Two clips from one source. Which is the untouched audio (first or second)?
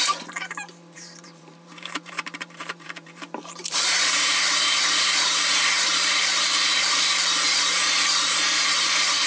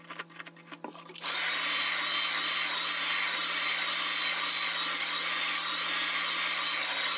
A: second